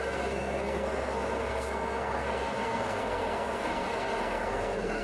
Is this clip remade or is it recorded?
remade